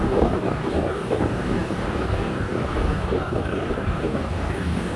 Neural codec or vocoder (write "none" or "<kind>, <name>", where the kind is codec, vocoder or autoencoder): codec, DAC